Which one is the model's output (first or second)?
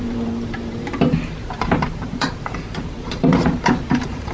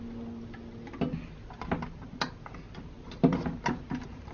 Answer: first